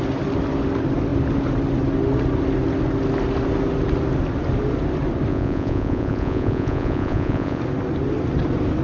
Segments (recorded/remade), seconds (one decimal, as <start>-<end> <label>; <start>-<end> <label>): 0.0-5.3 recorded; 5.3-7.6 remade; 7.6-8.8 recorded